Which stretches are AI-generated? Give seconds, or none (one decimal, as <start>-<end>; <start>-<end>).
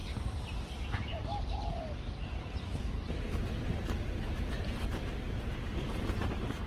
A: 2.7-6.7